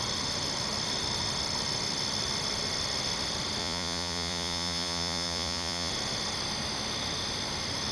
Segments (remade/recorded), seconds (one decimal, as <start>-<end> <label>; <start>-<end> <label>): 0.0-3.6 recorded; 3.6-5.9 remade; 5.9-7.9 recorded